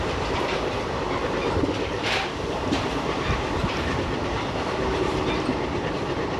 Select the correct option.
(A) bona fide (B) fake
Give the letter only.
B